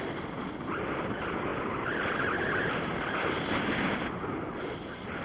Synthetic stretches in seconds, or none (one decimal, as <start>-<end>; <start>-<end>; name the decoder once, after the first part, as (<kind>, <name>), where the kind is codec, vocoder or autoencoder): none